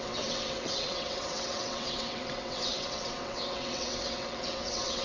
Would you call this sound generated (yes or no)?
yes